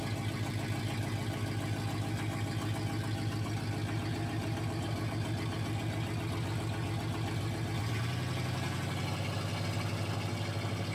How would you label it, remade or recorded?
recorded